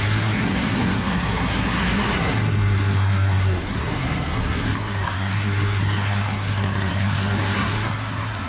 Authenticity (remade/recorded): remade